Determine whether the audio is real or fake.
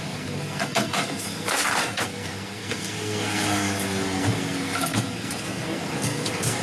fake